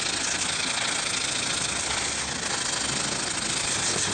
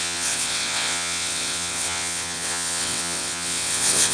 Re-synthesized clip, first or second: second